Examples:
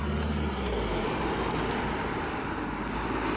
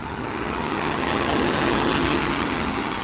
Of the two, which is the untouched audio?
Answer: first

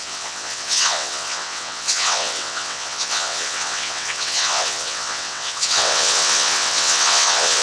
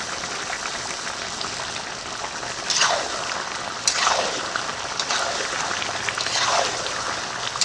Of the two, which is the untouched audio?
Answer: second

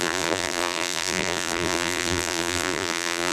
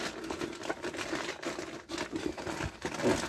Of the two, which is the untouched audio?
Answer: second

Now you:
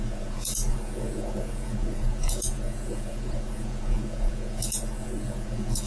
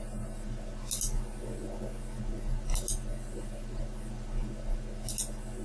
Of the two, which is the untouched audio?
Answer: second